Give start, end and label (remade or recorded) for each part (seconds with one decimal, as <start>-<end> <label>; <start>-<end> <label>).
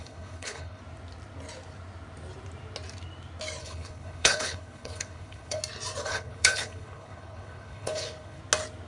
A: 0.0-0.8 remade; 0.8-3.6 recorded; 3.6-5.6 remade; 5.6-6.1 recorded; 6.1-8.4 remade; 8.4-8.9 recorded